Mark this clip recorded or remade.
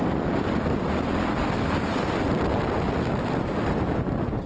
recorded